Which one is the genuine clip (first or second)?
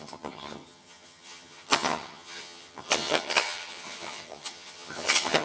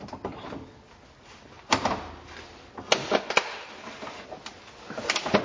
second